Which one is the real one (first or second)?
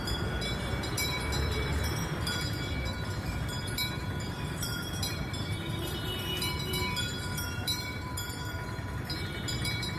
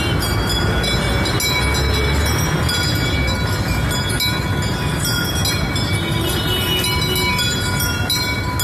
second